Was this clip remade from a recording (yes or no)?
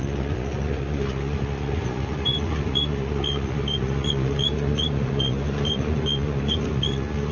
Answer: yes